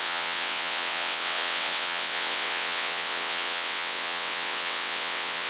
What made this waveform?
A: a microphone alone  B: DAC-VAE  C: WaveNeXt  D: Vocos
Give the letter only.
C